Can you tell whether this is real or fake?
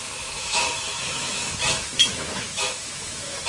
fake